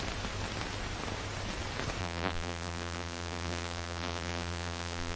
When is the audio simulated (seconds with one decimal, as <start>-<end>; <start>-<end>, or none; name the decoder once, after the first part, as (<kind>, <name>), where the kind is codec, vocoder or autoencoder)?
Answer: 2.0-5.2 (vocoder, BigVGAN v2)